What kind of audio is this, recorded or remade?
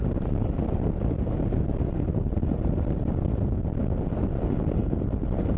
remade